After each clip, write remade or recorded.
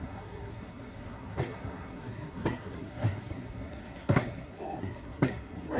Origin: remade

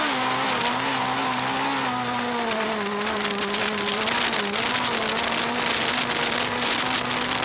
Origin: recorded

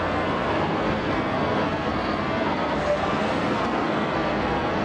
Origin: remade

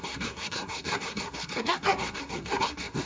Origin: remade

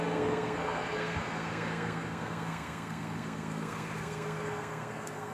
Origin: remade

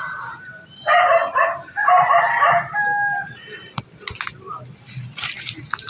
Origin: recorded